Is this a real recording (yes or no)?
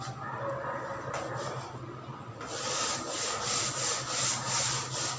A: yes